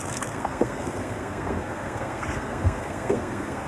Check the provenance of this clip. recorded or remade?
remade